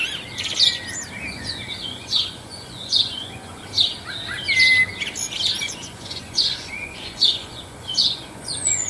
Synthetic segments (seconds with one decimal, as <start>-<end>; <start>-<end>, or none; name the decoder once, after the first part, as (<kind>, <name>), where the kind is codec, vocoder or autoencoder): 1.3-3.6 (vocoder, Vocos); 5.6-8.9